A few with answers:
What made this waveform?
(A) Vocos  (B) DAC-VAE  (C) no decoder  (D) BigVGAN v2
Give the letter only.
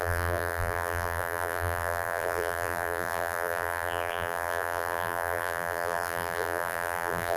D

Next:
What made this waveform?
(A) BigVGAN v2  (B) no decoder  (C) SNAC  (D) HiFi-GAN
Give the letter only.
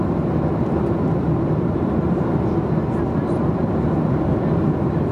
B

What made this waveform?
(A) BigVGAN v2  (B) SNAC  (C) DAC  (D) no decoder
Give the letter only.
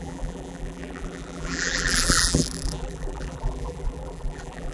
A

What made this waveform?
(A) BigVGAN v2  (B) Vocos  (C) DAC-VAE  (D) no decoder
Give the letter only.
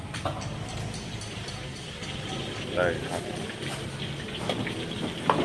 D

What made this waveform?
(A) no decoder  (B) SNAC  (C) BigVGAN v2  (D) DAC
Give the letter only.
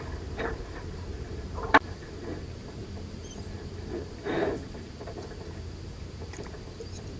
C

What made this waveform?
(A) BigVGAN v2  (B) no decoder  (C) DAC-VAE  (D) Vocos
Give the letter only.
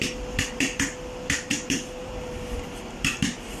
A